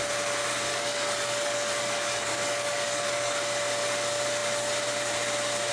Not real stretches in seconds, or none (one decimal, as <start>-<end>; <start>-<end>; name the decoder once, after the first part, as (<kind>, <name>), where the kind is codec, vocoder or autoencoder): 0.7-3.4 (codec, DAC)

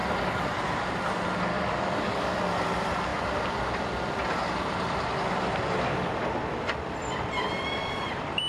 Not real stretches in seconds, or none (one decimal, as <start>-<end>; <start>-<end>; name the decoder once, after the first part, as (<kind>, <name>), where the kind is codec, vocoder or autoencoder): 1.5-2.4 (codec, DAC)

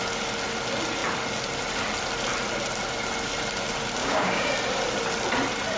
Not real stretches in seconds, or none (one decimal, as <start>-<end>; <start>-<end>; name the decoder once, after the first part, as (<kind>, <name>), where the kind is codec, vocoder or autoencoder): 4.0-4.5 (codec, DAC)

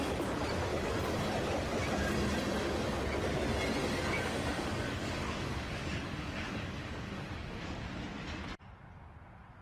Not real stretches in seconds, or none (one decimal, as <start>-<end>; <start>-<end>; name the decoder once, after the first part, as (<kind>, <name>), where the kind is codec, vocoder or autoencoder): 3.8-7.8 (codec, DAC)

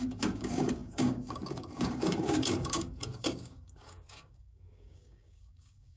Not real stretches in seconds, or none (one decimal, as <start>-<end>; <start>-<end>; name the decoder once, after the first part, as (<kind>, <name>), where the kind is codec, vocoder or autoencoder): 0.0-6.0 (codec, DAC)

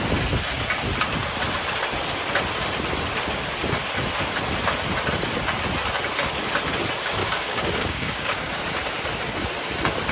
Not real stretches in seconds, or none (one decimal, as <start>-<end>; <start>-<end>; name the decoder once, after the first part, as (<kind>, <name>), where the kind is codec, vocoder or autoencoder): 7.2-8.6 (codec, DAC)

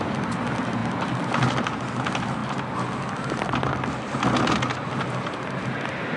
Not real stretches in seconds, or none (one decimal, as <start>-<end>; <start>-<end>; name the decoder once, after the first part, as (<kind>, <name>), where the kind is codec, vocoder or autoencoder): none

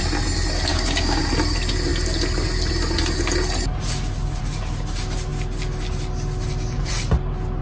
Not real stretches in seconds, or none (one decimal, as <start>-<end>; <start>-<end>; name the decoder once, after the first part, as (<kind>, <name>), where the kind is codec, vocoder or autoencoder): 0.7-1.2 (codec, DAC)